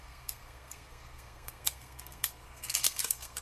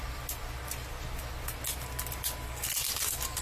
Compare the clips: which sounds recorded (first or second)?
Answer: second